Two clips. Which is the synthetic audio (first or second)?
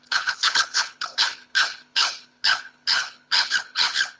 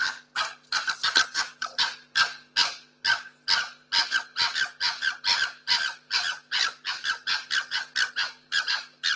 first